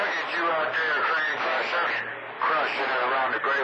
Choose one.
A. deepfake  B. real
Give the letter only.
B